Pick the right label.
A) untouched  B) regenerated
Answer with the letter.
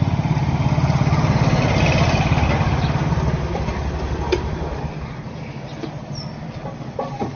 A